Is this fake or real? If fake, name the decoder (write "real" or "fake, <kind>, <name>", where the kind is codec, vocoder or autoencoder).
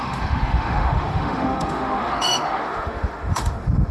fake, autoencoder, DAC-VAE